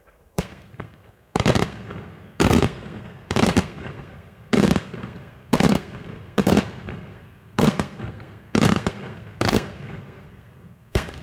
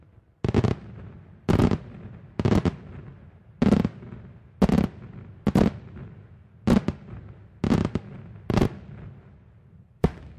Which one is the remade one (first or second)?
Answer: first